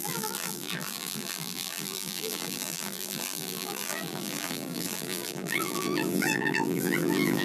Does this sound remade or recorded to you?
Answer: remade